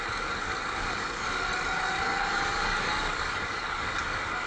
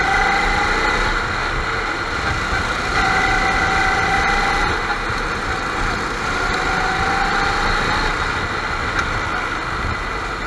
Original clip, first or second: second